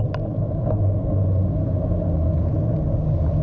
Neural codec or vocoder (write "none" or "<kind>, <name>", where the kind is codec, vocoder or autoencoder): none